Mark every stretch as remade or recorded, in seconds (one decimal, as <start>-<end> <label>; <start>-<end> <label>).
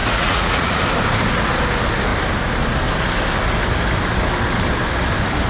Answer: 0.0-0.8 remade; 0.8-5.5 recorded